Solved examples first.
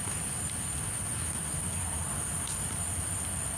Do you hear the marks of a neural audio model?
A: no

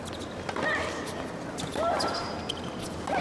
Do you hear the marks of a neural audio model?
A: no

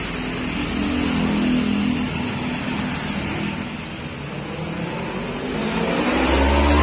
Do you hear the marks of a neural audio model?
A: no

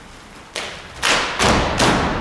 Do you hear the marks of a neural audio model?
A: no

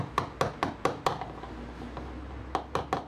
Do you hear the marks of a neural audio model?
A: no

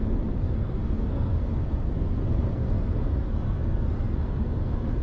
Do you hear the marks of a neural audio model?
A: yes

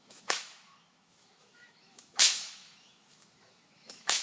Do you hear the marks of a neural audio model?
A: yes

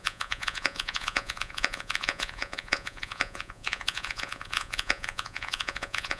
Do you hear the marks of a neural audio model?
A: yes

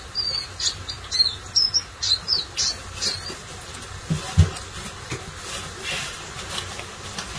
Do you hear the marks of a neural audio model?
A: no